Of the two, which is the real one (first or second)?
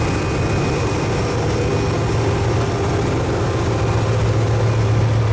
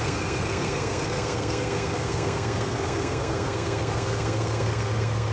first